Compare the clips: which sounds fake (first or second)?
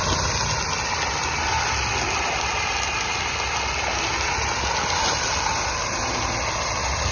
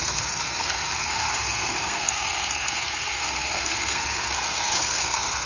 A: second